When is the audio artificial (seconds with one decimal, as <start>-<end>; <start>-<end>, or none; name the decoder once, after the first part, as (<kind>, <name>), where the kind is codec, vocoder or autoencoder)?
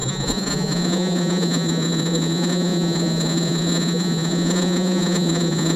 0.0-5.8 (vocoder, Vocos)